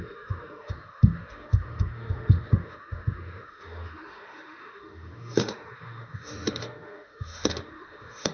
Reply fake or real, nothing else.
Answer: fake